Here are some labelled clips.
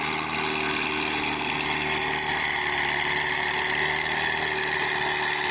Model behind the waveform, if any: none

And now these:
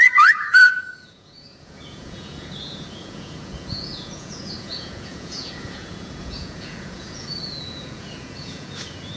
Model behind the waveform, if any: vocoder, Vocos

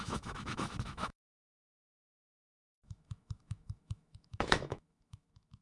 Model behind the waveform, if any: autoencoder, DAC-VAE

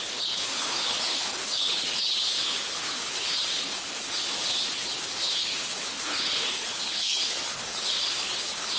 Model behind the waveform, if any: codec, HILCodec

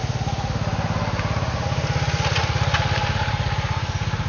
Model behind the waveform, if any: none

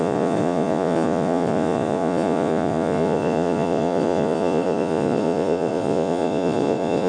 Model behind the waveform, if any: vocoder, Vocos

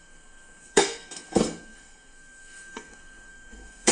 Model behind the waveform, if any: codec, SNAC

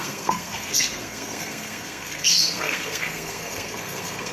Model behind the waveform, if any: codec, SNAC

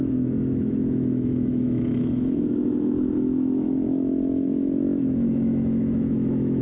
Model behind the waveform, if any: autoencoder, DAC-VAE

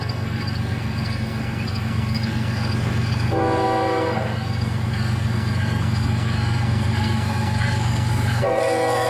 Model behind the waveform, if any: codec, SNAC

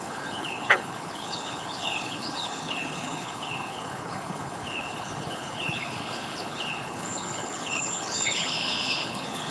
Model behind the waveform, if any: codec, HILCodec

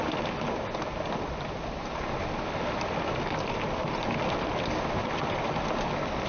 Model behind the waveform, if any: none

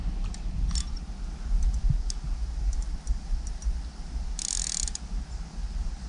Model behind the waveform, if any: none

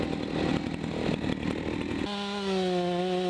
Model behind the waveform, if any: none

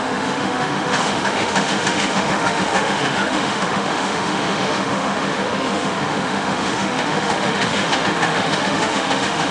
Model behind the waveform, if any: autoencoder, DAC-VAE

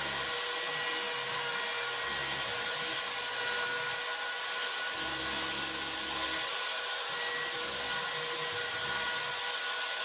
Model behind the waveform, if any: none